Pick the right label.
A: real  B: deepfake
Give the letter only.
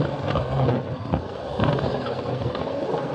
B